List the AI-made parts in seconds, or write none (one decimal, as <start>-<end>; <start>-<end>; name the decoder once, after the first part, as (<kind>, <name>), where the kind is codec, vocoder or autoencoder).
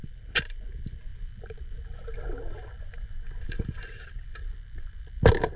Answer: none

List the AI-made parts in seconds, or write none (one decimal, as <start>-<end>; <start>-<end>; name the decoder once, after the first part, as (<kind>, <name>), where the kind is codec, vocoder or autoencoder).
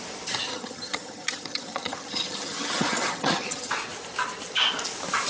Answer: 0.5-3.7 (vocoder, HiFi-GAN)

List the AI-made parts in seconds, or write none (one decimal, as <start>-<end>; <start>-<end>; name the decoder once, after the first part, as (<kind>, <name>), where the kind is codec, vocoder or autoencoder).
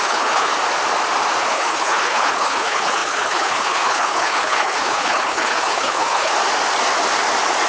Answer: 0.0-0.5 (codec, HILCodec); 1.4-6.3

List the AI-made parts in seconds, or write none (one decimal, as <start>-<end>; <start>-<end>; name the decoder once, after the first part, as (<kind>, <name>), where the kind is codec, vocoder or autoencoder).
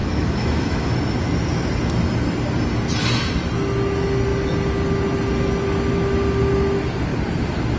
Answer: 0.0-0.9 (autoencoder, DAC-VAE)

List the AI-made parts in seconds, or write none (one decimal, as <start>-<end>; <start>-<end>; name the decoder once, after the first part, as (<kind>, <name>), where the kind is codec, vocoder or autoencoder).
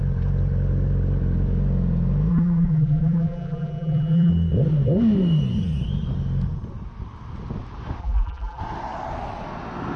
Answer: 2.3-4.3 (vocoder, BigVGAN v2); 8.0-8.6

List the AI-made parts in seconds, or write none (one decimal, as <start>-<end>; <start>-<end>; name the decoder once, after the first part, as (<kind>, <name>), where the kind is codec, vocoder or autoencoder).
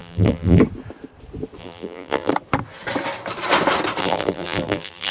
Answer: 0.0-0.6 (vocoder, BigVGAN v2); 1.6-2.3; 4.0-5.1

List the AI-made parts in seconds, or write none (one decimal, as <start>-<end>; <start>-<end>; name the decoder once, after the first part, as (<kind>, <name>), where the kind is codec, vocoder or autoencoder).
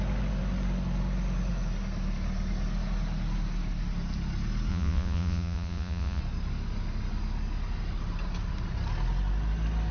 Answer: 4.7-6.2 (vocoder, Vocos)